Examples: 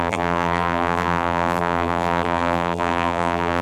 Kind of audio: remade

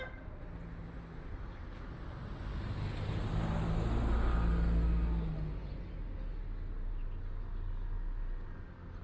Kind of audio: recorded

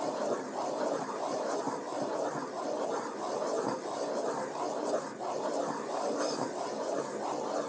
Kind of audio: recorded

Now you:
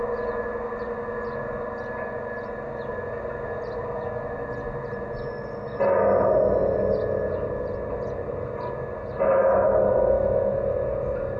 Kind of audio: recorded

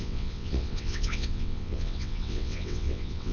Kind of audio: remade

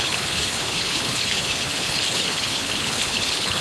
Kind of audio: remade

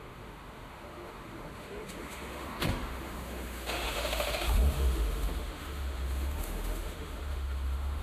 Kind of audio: remade